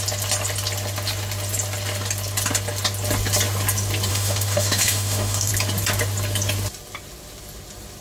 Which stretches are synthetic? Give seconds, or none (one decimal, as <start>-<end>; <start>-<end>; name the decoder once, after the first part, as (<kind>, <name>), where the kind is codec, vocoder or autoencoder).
4.1-5.5 (autoencoder, DAC-VAE)